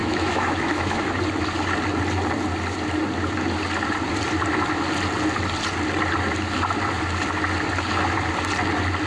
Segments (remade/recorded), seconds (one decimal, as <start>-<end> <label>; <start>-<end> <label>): 0.0-1.1 remade; 1.1-9.1 recorded